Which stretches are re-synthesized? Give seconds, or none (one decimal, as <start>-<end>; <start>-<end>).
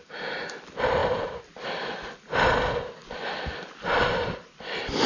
none